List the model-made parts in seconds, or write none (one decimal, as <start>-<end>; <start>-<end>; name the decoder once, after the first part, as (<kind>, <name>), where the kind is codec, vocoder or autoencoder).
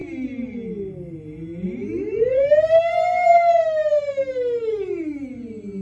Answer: none